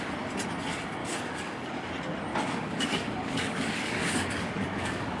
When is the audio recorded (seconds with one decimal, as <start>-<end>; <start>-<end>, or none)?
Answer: 0.0-1.0; 1.9-2.3